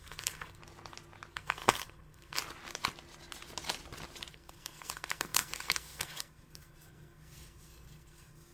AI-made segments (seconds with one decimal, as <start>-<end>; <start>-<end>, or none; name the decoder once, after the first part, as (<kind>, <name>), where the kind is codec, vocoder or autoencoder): 0.0-0.6 (codec, SNAC); 1.3-2.4; 4.3-8.5